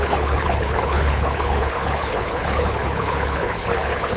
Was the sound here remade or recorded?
remade